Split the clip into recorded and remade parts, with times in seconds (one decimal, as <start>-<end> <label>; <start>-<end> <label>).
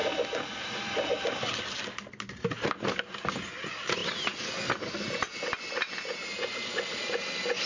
0.0-7.7 recorded